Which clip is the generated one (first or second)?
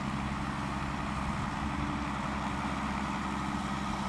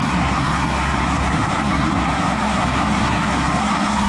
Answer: second